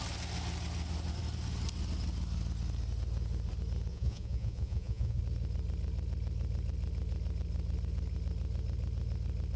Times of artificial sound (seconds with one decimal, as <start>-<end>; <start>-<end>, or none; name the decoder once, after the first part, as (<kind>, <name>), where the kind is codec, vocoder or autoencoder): 3.9-5.2 (vocoder, Vocos)